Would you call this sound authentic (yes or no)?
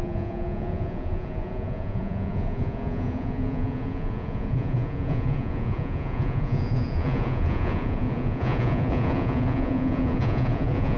no